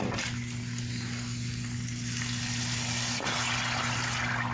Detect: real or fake real